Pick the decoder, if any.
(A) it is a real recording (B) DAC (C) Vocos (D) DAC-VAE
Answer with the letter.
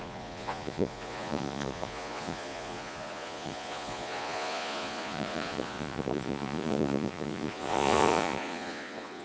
C